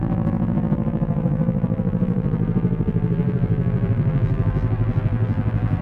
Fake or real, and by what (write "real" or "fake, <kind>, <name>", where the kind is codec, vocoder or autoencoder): fake, vocoder, BigVGAN v2